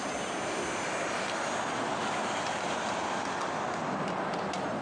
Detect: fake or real real